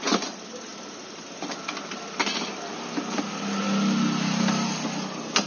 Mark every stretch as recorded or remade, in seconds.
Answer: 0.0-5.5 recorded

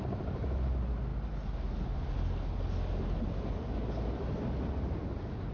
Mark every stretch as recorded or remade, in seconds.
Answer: 0.0-5.5 recorded

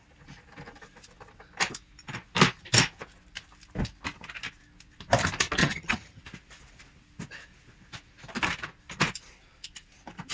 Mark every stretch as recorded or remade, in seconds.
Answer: 0.0-5.6 recorded; 5.6-6.2 remade; 6.2-10.3 recorded

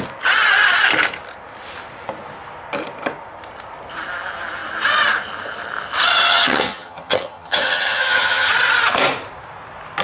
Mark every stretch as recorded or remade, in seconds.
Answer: 0.0-6.3 recorded; 6.3-8.5 remade; 8.5-10.0 recorded

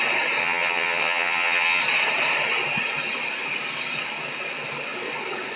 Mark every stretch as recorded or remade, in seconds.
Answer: 0.0-0.4 recorded; 0.4-1.8 remade; 1.8-5.6 recorded

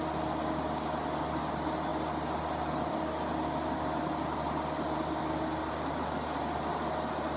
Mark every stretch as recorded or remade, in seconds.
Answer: 0.0-7.4 recorded